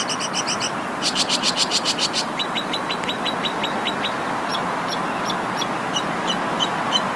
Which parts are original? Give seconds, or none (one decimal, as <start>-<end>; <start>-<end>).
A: 0.0-7.2